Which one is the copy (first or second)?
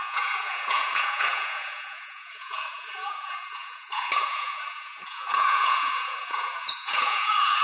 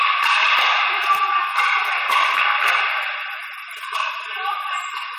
first